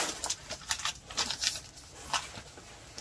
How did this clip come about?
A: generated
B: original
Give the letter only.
B